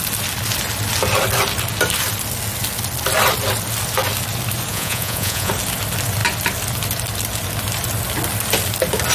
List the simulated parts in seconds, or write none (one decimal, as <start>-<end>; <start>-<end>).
4.7-5.5